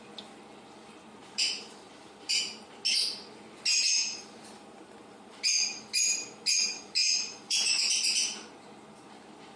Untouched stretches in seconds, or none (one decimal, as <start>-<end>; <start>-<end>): 0.0-1.2; 2.7-3.7; 5.4-7.0; 7.8-9.6

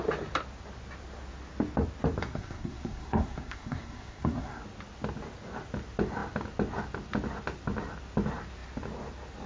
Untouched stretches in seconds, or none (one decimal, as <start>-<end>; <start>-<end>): 0.0-2.2; 4.6-9.5

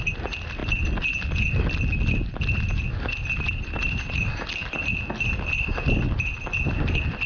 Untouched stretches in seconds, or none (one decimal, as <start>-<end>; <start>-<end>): 0.0-7.3

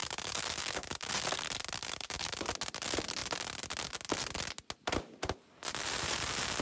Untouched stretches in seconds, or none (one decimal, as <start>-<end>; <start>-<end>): 1.1-1.8; 2.5-6.6

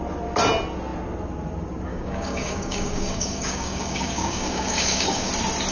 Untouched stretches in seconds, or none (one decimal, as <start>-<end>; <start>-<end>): 0.0-1.9; 5.3-5.7